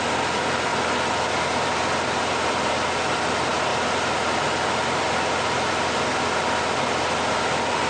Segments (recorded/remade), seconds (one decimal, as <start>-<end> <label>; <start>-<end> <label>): 0.0-0.7 recorded; 0.7-2.7 remade; 2.7-7.9 recorded